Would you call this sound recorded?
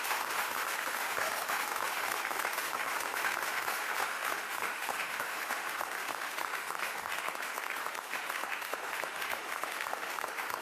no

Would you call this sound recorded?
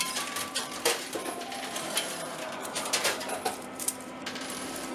no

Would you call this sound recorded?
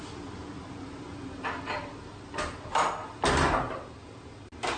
yes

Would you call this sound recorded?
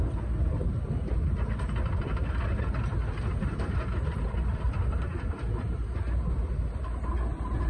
yes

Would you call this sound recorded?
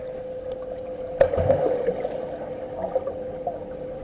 yes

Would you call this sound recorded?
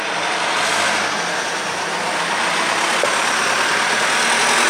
yes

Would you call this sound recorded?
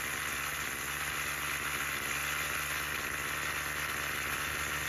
yes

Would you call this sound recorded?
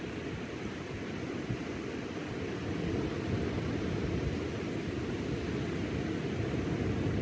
yes